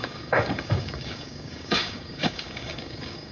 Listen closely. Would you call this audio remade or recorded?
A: remade